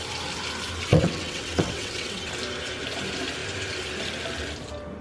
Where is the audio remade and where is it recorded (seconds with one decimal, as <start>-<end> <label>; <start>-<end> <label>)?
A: 0.0-0.9 recorded; 0.9-2.3 remade; 2.3-5.0 recorded